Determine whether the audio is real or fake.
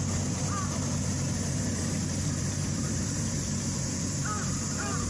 fake